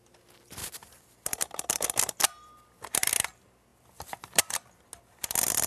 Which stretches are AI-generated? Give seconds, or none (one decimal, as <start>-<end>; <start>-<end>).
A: 0.6-1.8; 2.4-3.1; 3.7-4.4